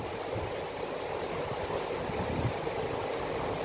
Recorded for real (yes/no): yes